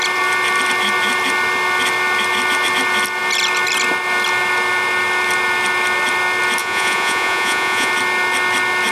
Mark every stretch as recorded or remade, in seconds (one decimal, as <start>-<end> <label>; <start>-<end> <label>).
0.0-6.6 recorded; 6.6-7.9 remade; 7.9-8.9 recorded